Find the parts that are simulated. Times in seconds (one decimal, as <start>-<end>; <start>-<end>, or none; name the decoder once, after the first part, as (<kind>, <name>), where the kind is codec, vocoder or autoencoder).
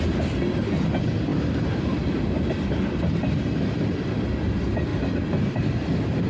none